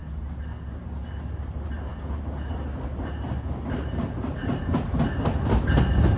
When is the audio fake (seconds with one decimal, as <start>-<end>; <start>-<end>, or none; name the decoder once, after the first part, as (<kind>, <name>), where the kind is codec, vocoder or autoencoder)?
none